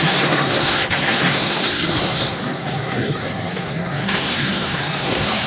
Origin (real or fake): fake